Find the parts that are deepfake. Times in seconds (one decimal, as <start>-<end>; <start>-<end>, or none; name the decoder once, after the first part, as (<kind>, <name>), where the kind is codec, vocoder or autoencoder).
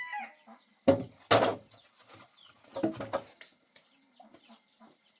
0.5-1.1 (vocoder, BigVGAN v2)